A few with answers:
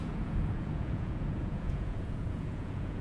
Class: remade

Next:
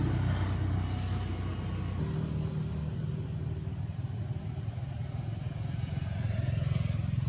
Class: recorded